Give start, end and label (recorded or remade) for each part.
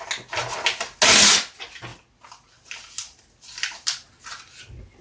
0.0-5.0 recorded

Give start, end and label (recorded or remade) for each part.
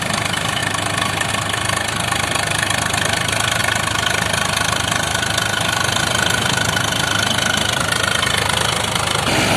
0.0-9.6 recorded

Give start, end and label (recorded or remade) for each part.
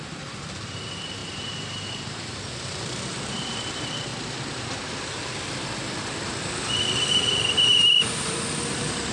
0.0-1.2 recorded; 1.2-3.5 remade; 3.5-7.7 recorded; 7.7-8.3 remade; 8.3-9.1 recorded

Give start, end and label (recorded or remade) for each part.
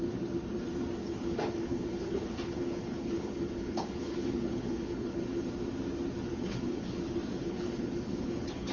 0.0-1.0 recorded; 1.0-5.5 remade; 5.5-6.3 recorded; 6.3-7.0 remade; 7.0-7.4 recorded; 7.4-8.7 remade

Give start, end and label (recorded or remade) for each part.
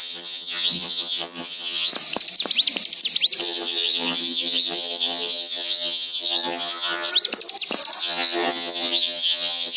0.0-1.9 remade; 1.9-3.4 recorded; 3.4-7.1 remade; 7.1-8.0 recorded; 8.0-9.8 remade